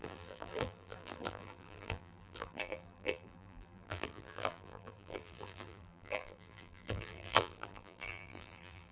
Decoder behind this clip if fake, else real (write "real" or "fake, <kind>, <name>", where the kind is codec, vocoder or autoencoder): fake, vocoder, BigVGAN v2